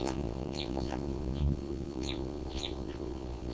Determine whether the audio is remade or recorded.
remade